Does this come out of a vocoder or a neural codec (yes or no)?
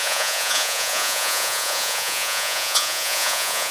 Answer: yes